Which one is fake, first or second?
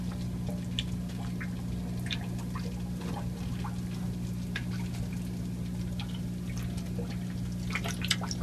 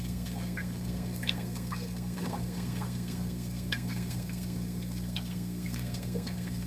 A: second